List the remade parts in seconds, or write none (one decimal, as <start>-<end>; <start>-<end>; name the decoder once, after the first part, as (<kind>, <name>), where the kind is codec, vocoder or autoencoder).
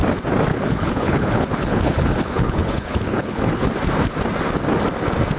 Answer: 0.5-3.7 (codec, HILCodec)